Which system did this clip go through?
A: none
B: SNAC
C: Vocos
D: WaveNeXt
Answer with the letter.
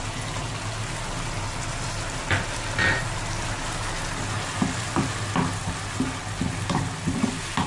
A